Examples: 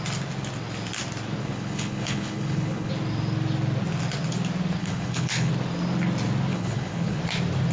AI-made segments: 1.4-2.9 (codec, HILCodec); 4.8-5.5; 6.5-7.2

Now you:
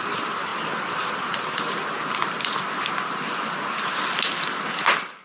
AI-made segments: none

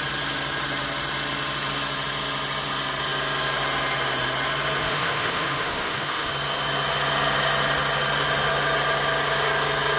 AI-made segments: 4.8-6.3 (autoencoder, DAC-VAE)

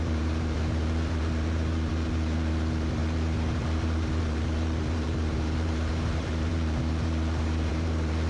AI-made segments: 0.0-8.3 (vocoder, BigVGAN v2)